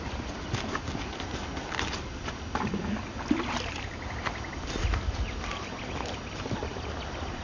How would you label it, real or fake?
real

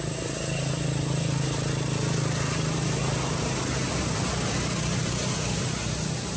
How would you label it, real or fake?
real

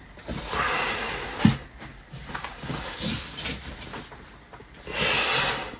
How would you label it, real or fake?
real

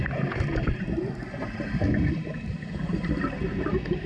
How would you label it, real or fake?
fake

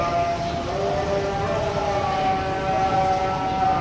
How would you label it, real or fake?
real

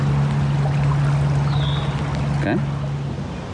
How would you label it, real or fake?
real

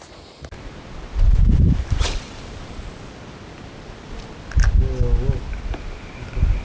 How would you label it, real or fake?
real